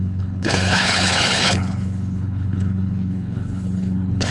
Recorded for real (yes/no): no